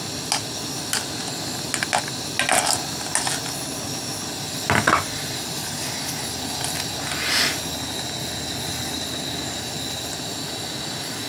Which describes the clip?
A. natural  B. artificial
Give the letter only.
A